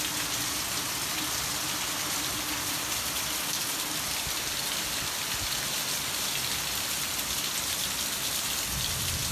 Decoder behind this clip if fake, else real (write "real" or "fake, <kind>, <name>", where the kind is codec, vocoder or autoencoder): real